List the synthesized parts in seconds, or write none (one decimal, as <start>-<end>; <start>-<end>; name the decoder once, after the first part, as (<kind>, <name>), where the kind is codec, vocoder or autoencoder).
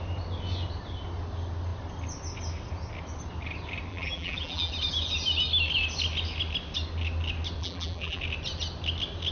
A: 3.9-4.7 (vocoder, BigVGAN v2); 7.6-8.2